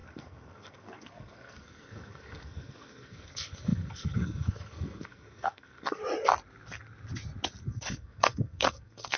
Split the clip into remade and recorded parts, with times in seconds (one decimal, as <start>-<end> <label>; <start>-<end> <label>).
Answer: 0.0-6.0 remade; 6.0-7.6 recorded; 7.6-9.2 remade